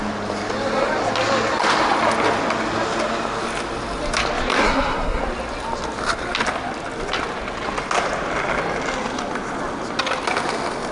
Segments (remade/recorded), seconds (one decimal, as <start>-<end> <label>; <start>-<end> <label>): 0.0-4.6 recorded; 4.6-5.2 remade; 5.2-10.9 recorded